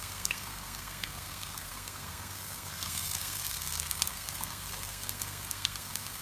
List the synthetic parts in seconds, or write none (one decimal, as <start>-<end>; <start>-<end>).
0.0-6.2